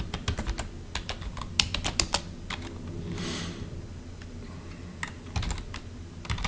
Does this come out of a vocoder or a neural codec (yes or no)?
no